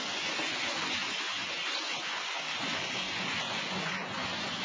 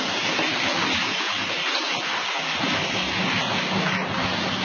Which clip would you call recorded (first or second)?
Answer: second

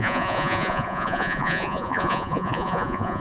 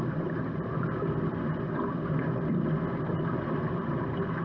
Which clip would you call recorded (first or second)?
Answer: second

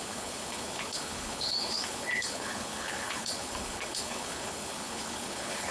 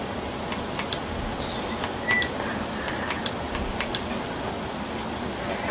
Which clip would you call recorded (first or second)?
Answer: second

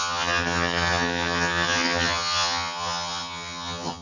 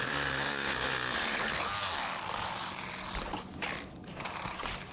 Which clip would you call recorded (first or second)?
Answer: second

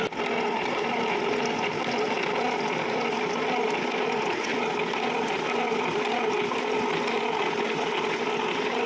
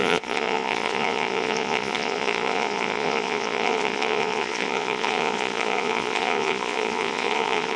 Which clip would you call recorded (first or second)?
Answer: first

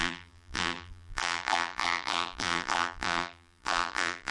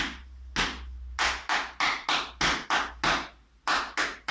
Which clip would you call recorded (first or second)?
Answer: second